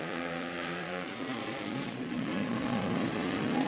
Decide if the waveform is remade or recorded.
remade